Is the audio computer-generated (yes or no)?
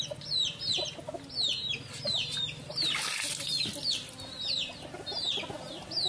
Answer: no